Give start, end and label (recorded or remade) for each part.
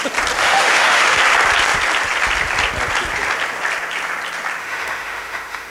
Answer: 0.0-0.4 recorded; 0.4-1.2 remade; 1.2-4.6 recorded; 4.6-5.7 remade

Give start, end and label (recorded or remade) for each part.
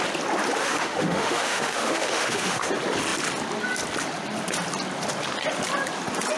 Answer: 0.0-0.6 recorded; 0.6-2.7 remade; 2.7-6.4 recorded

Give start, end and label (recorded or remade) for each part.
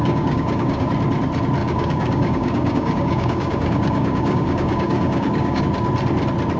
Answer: 0.0-0.9 remade; 0.9-1.6 recorded; 1.6-5.6 remade; 5.6-6.6 recorded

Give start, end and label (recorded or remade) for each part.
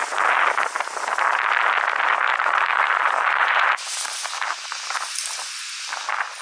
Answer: 0.0-2.3 recorded; 2.3-4.9 remade; 4.9-6.4 recorded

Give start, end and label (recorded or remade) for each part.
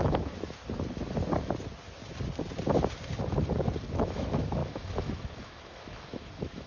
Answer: 0.0-0.6 remade; 0.6-3.9 recorded; 3.9-6.7 remade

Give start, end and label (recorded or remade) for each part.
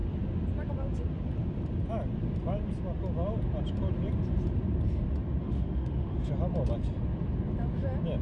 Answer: 0.0-5.4 recorded; 5.4-6.3 remade; 6.3-8.2 recorded